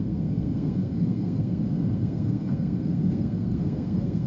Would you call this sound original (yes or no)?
no